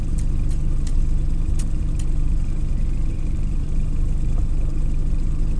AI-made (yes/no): yes